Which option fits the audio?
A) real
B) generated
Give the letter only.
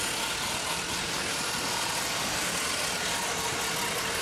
A